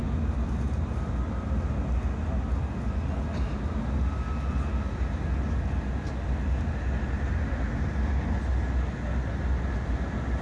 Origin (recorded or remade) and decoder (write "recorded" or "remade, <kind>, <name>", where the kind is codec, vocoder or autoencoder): recorded